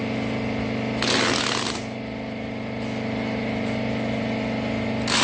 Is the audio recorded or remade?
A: recorded